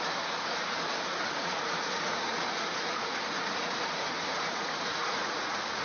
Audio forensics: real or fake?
fake